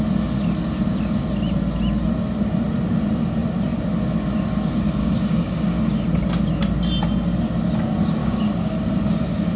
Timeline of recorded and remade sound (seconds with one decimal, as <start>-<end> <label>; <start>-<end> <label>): 0.0-5.0 recorded; 5.0-5.8 remade; 5.8-8.2 recorded; 8.2-8.7 remade; 8.7-9.6 recorded